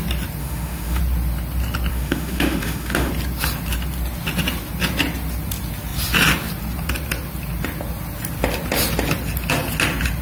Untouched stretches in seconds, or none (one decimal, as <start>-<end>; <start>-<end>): 0.0-0.4; 1.0-1.9; 3.1-10.2